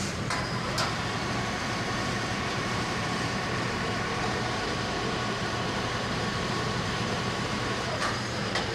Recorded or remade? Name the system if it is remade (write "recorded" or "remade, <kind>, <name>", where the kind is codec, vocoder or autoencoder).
remade, vocoder, BigVGAN v2